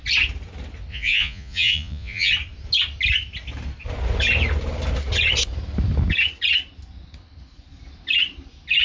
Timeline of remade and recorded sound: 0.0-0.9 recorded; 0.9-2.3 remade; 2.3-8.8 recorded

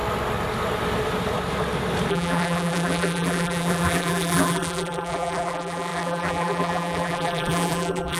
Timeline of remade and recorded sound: 0.0-2.1 recorded; 2.1-8.2 remade

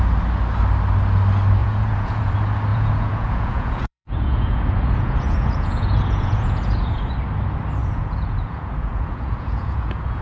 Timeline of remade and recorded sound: 0.0-1.6 recorded; 1.6-2.3 remade; 2.3-2.7 recorded; 2.7-7.1 remade; 7.1-7.8 recorded; 7.8-10.2 remade

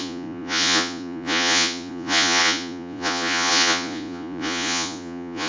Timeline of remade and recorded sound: 0.0-5.5 remade

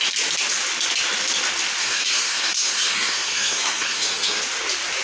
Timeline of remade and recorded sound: 0.0-1.8 recorded; 1.8-4.4 remade; 4.4-5.0 recorded

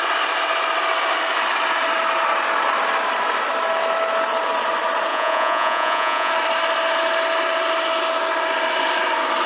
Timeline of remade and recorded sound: 0.0-5.1 recorded; 5.1-6.3 remade; 6.3-9.5 recorded

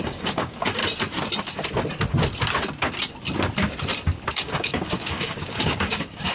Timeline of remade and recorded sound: 0.0-0.8 remade; 0.8-4.3 recorded; 4.3-6.3 remade